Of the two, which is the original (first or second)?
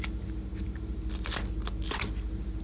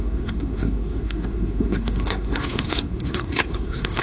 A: first